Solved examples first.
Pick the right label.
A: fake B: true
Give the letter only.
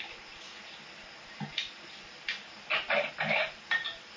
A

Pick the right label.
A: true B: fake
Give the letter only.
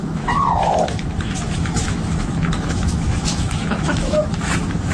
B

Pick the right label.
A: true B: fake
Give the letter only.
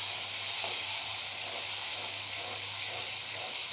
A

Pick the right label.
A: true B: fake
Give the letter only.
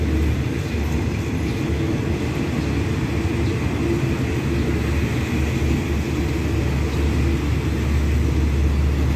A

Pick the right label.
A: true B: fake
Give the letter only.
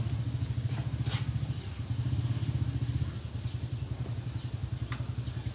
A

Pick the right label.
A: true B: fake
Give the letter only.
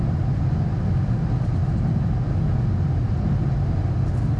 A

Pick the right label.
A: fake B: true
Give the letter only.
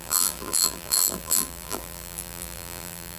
A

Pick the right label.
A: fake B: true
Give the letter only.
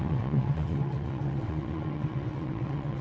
A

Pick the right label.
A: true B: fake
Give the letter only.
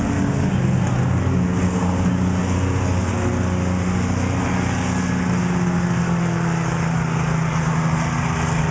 A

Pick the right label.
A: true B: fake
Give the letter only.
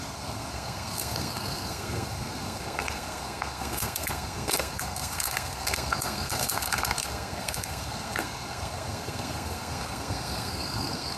B